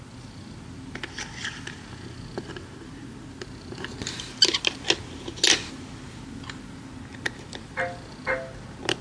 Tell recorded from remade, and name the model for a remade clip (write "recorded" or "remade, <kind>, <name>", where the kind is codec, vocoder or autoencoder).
recorded